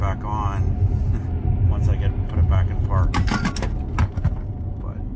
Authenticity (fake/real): real